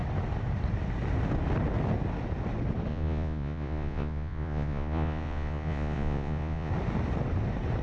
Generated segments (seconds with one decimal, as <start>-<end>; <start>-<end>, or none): 2.9-6.7